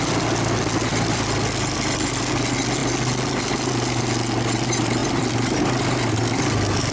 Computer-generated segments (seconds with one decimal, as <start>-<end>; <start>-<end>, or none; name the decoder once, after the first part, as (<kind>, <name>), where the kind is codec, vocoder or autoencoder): 0.9-2.2 (vocoder, BigVGAN v2); 5.0-5.6